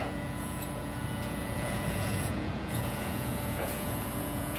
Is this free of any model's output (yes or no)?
no